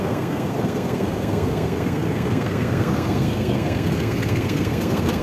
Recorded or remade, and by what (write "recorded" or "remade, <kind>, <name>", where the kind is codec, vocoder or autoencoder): remade, codec, SNAC